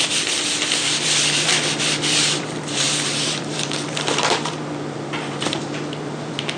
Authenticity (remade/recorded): remade